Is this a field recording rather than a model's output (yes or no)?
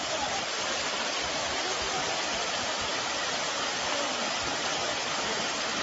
no